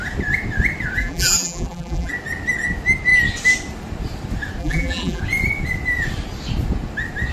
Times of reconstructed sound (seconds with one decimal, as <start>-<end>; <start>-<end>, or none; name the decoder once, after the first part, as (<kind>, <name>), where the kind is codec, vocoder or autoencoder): 1.0-2.1 (vocoder, BigVGAN v2); 4.6-5.2